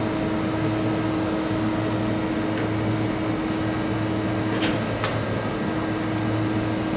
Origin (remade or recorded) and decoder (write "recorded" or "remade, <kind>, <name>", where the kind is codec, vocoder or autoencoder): recorded